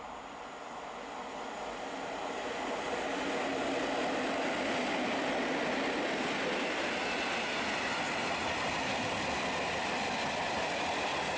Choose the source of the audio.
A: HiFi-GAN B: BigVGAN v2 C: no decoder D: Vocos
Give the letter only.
C